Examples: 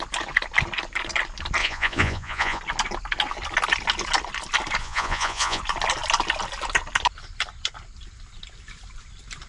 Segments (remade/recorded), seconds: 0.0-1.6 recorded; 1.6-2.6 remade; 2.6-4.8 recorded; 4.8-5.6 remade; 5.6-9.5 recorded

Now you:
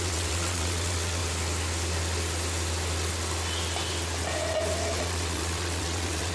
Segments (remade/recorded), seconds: 0.0-1.2 remade; 1.2-5.0 recorded; 5.0-6.3 remade

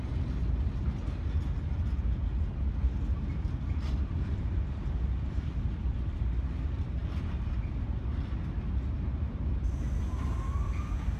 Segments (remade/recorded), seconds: 0.0-11.2 recorded

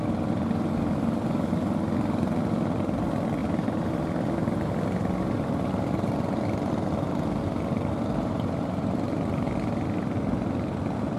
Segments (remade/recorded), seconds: 0.0-3.4 recorded; 3.4-3.9 remade; 3.9-11.2 recorded

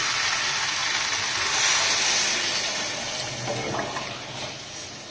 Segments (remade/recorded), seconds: 0.0-5.1 recorded

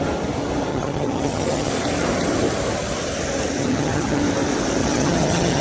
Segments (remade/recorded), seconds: 0.0-0.7 recorded; 0.7-1.7 remade; 1.7-3.6 recorded; 3.6-4.2 remade; 4.2-4.8 recorded; 4.8-5.6 remade

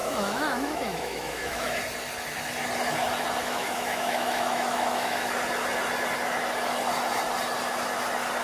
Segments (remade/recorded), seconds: 0.0-1.8 remade; 1.8-3.4 recorded; 3.4-5.3 remade; 5.3-8.4 recorded

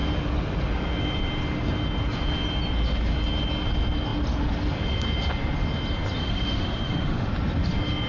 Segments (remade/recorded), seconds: 0.0-6.2 recorded; 6.2-7.3 remade; 7.3-8.1 recorded